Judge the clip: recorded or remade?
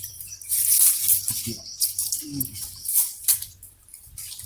remade